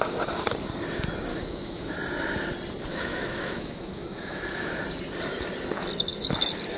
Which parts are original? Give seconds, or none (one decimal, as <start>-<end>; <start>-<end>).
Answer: 0.0-1.3; 1.9-2.9; 4.8-6.8